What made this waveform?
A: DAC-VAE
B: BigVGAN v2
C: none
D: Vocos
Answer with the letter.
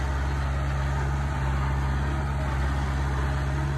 C